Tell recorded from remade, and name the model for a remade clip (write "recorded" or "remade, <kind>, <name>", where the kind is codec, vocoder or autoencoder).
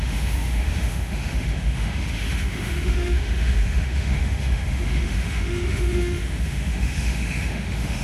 remade, autoencoder, DAC-VAE